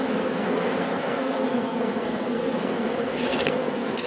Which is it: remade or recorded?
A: remade